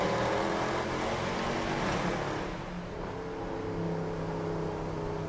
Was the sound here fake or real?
real